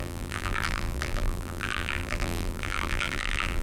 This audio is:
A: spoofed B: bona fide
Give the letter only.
A